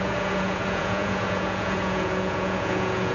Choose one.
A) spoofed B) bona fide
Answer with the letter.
A